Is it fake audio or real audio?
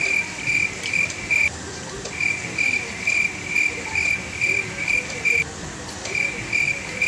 real